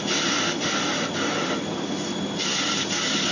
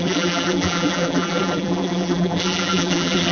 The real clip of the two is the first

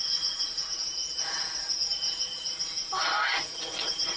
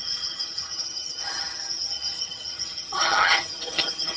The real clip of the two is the first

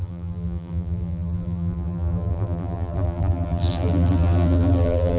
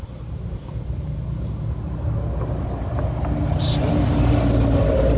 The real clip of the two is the second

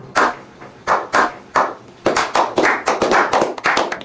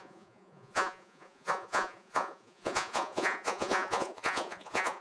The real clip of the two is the first